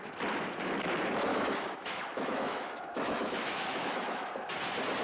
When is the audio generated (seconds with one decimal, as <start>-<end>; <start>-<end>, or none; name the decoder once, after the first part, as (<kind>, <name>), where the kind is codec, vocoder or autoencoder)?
1.3-4.3 (autoencoder, DAC-VAE)